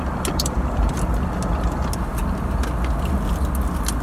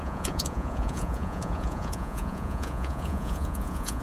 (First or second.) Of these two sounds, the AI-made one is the second